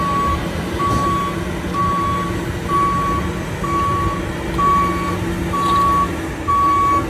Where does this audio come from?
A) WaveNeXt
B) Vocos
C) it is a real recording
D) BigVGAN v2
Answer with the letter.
C